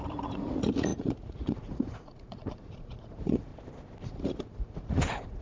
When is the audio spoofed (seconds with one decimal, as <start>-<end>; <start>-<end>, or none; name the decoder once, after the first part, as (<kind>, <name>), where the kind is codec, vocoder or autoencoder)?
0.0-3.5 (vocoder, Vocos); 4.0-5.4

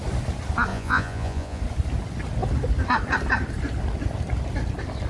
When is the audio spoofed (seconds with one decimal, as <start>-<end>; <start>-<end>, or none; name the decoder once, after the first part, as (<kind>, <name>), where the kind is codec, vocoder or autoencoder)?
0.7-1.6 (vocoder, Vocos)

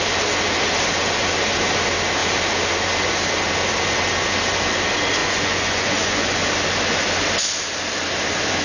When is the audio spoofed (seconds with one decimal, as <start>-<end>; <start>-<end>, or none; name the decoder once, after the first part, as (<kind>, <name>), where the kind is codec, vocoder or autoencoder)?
5.2-6.5 (vocoder, Vocos)

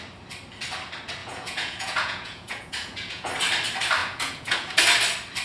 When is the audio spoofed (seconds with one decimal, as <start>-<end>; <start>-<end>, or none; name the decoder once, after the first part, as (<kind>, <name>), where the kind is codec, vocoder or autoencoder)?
1.2-3.3 (vocoder, Vocos); 4.0-4.7

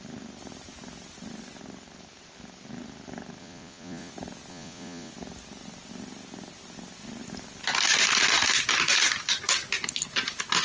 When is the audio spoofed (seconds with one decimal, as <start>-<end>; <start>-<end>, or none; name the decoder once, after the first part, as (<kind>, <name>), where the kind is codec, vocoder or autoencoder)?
3.4-4.1 (vocoder, Vocos); 4.5-5.1

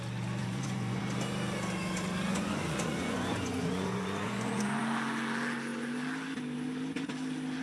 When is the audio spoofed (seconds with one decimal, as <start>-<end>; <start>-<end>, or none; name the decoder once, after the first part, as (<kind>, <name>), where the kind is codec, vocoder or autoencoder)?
0.4-1.0 (vocoder, Vocos); 2.3-4.8

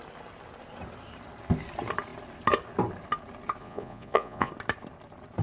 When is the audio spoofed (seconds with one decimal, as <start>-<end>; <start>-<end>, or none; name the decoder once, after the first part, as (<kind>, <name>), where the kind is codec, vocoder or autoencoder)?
3.6-4.5 (vocoder, Vocos)